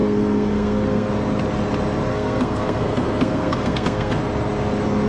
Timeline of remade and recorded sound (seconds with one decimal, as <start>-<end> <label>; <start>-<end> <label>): 0.0-1.1 remade; 1.1-2.1 recorded; 2.1-4.2 remade; 4.2-5.1 recorded